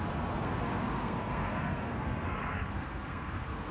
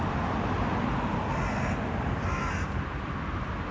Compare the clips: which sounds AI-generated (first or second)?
first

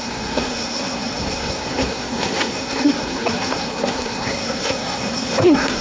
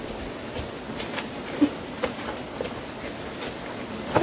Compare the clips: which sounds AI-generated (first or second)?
first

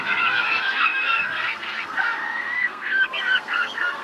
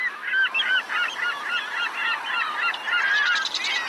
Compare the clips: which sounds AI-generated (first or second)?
first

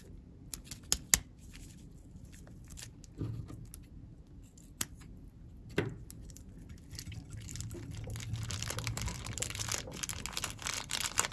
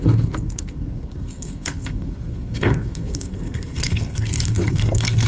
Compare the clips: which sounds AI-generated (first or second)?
second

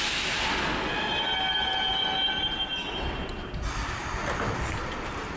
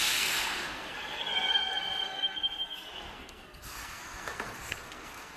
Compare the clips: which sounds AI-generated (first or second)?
second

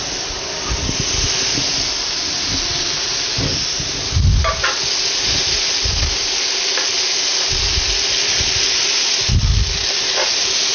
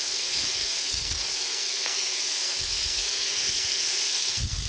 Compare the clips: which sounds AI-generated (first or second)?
second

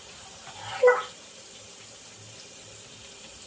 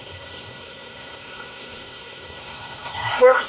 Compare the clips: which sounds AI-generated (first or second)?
second